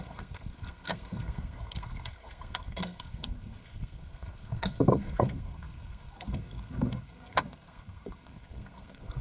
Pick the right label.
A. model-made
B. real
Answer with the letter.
A